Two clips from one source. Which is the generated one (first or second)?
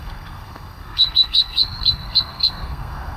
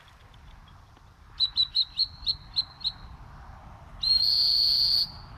first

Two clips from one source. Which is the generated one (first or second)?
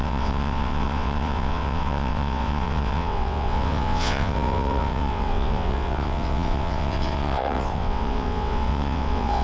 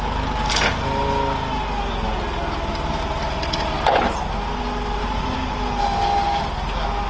first